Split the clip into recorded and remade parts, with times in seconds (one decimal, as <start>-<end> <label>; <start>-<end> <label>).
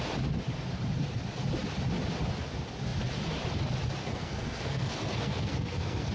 0.0-4.0 recorded; 4.0-6.1 remade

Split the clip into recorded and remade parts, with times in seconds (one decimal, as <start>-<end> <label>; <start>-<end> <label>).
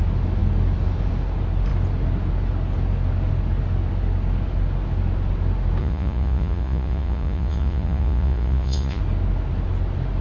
0.0-5.8 recorded; 5.8-9.0 remade; 9.0-10.2 recorded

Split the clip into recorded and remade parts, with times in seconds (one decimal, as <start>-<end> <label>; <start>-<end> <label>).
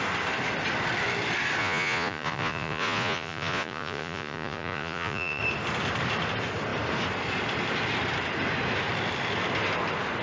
0.0-1.6 recorded; 1.6-5.4 remade; 5.4-10.2 recorded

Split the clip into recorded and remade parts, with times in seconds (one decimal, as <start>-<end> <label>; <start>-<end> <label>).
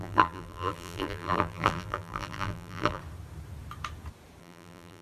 0.0-3.0 remade; 3.0-4.4 recorded; 4.4-5.0 remade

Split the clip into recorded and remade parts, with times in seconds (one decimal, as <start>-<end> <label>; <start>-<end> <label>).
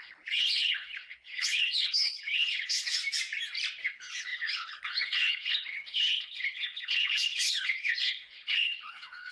0.0-3.0 remade; 3.0-3.8 recorded; 3.8-9.3 remade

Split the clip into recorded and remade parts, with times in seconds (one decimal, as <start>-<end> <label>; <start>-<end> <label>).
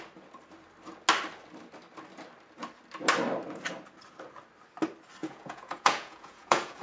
0.0-5.2 recorded; 5.2-6.8 remade